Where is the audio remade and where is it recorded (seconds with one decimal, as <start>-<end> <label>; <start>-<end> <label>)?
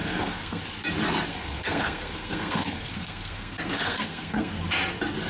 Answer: 0.0-0.6 remade; 0.6-1.3 recorded; 1.3-4.5 remade; 4.5-5.3 recorded